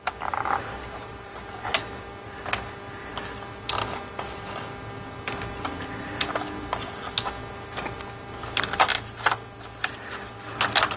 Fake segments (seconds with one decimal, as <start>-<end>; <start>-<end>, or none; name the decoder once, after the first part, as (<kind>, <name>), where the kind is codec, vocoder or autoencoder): 0.8-1.4 (vocoder, BigVGAN v2)